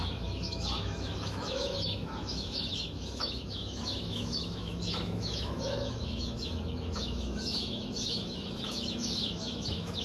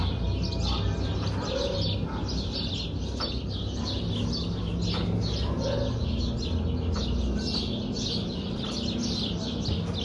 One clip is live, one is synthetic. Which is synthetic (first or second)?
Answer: first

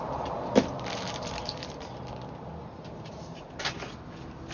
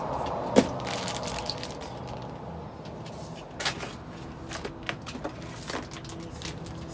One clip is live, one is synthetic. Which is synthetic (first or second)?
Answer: first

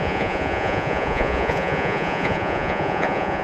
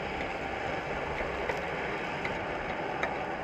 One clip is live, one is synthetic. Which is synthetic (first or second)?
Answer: first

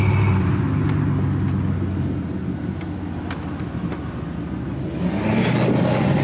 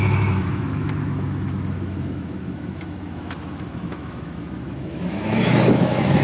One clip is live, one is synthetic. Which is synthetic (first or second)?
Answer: second